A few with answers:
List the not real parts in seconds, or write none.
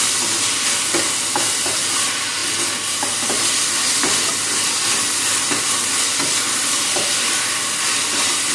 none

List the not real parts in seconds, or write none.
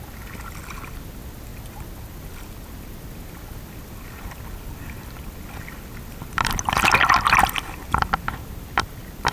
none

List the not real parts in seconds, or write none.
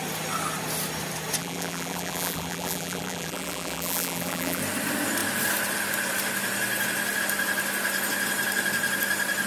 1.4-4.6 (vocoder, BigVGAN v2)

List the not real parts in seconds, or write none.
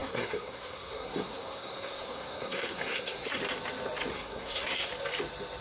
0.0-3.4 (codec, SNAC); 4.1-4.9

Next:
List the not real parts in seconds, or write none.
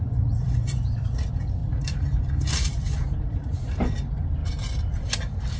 0.0-4.4 (vocoder, BigVGAN v2)